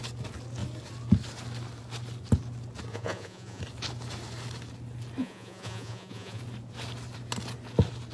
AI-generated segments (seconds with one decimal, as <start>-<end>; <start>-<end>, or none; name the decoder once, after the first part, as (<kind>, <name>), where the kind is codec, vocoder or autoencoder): 2.9-3.6 (vocoder, Vocos); 5.2-6.4

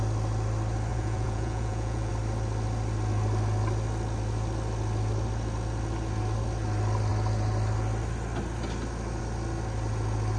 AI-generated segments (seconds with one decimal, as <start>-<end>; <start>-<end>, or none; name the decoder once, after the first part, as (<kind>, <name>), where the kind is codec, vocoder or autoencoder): 0.9-2.1 (vocoder, Vocos)

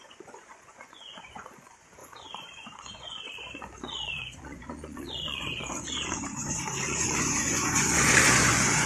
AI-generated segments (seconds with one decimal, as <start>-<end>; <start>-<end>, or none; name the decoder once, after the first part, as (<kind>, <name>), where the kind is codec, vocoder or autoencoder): 0.0-8.9 (vocoder, Vocos)

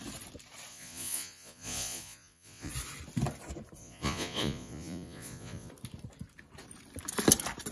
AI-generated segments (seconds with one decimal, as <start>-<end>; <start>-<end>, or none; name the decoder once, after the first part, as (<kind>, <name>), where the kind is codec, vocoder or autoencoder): 0.7-2.7 (vocoder, Vocos); 3.8-5.7

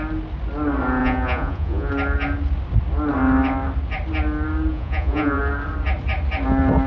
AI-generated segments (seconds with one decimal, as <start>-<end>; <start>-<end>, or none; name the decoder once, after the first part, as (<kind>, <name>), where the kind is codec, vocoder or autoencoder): 1.0-1.9 (vocoder, Vocos); 4.7-5.4

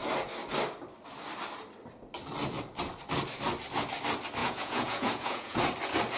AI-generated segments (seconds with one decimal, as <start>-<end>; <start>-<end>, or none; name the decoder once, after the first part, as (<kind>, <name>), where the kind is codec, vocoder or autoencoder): 4.4-5.6 (vocoder, Vocos)

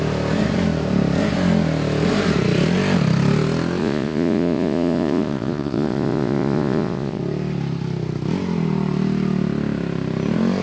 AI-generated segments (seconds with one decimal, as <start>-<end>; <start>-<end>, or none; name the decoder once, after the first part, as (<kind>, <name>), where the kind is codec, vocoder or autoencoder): 3.8-7.2 (vocoder, Vocos)

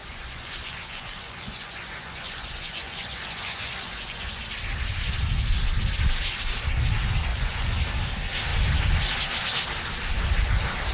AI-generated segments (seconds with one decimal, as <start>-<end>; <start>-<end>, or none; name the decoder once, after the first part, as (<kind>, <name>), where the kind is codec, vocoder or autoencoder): 0.0-4.4 (vocoder, Vocos); 7.3-7.8